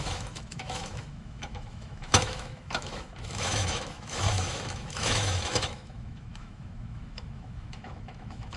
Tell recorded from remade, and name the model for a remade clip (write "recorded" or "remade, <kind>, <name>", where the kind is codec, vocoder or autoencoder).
remade, autoencoder, DAC-VAE